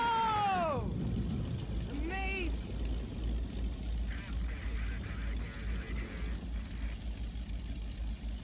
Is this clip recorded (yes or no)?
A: yes